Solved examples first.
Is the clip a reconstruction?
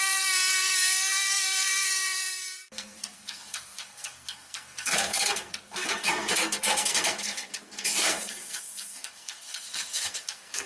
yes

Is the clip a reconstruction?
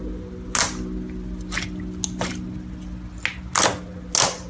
no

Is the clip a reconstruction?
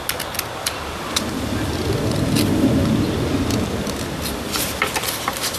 no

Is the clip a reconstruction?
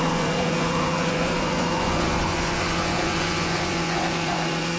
yes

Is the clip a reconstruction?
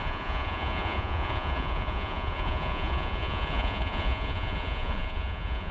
yes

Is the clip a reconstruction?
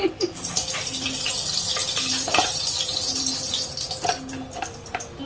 yes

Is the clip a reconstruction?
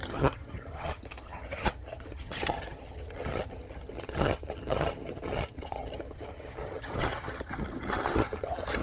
yes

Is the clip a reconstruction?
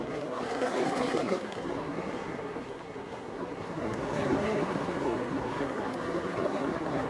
yes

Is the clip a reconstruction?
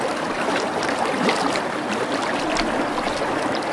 no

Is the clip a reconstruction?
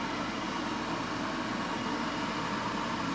no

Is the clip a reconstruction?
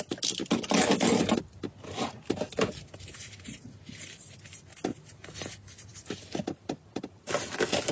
no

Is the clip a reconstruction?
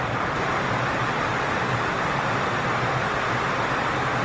no